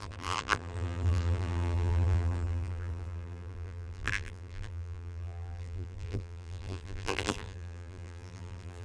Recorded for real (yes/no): no